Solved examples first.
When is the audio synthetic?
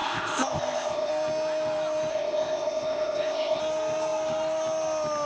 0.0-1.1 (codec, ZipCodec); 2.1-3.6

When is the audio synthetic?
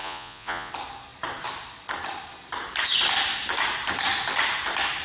0.0-0.7 (vocoder, Vocos)